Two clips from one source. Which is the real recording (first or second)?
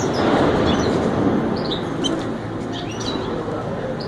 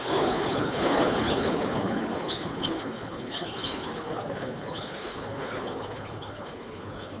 first